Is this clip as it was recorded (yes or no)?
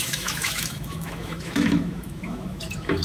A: no